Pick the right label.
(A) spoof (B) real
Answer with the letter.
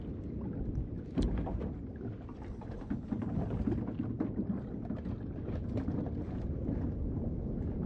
B